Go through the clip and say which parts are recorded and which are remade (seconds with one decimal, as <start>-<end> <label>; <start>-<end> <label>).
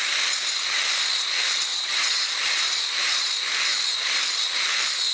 0.0-1.7 recorded; 1.7-2.3 remade; 2.3-5.1 recorded